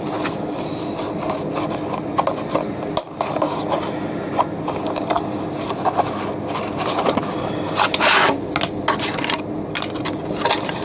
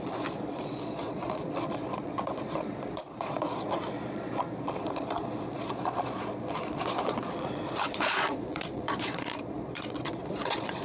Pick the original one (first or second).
first